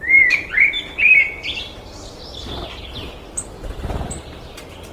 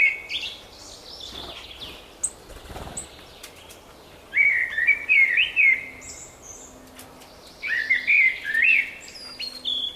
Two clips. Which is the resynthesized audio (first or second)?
first